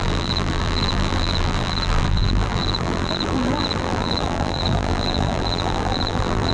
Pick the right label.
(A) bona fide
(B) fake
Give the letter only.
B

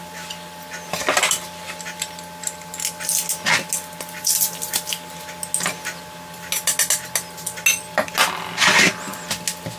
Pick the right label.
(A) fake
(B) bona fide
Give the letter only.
B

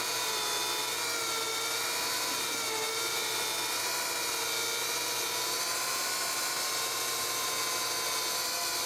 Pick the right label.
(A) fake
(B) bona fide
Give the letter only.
B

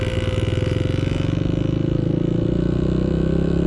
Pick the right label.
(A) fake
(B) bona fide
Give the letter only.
B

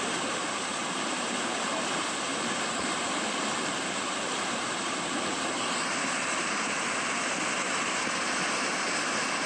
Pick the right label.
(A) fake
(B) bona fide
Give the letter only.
A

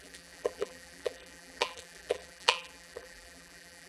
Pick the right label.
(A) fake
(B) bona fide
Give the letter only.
A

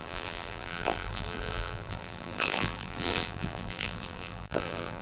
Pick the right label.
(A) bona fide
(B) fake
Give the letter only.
B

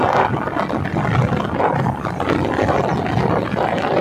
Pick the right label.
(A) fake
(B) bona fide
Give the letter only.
B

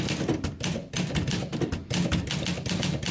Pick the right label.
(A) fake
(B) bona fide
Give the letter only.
B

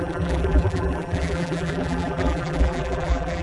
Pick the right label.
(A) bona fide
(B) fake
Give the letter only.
B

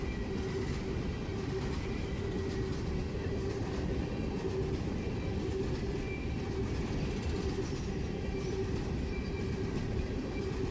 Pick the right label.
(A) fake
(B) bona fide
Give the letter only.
B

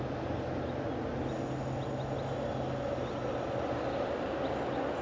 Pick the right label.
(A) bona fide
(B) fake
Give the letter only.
A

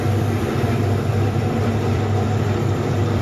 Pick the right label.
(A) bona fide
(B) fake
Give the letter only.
B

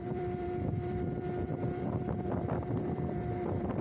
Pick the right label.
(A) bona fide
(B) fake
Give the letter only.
B